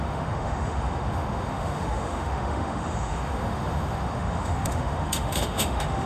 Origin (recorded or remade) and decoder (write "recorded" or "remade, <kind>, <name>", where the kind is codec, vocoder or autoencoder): remade, autoencoder, DAC-VAE